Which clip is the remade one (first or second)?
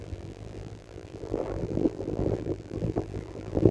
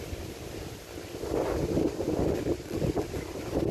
first